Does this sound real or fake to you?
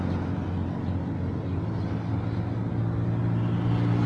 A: real